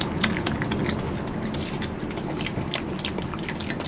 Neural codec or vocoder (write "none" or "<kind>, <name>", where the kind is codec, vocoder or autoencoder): none